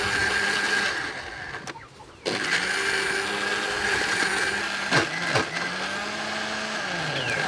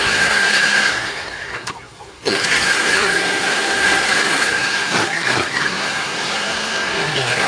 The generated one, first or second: second